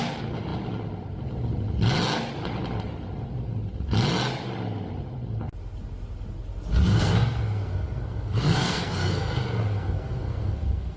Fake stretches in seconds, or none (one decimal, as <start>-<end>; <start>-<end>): 6.9-11.0